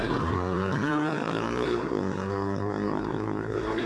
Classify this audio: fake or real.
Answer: fake